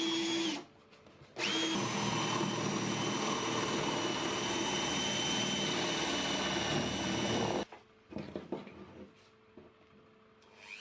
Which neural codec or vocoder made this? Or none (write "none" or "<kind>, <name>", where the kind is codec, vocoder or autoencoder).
none